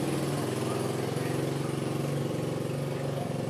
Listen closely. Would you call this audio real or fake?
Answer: real